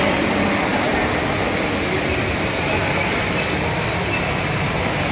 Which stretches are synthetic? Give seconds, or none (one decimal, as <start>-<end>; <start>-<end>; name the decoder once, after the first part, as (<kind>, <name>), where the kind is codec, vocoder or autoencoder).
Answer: none